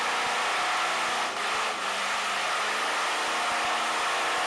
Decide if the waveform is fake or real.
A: real